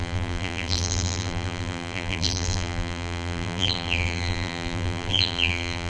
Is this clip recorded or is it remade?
remade